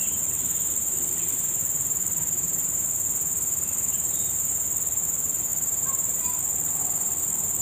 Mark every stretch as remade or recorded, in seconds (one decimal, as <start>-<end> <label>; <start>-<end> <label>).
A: 0.0-7.6 remade